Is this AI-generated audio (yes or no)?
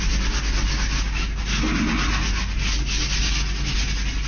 no